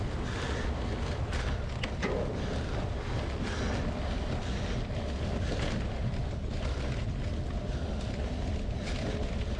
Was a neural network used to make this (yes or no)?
no